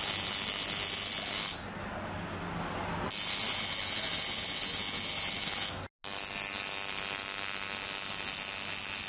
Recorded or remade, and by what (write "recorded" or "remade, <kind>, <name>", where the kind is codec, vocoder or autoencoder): recorded